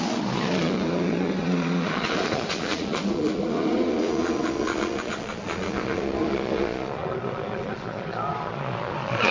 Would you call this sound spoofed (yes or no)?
yes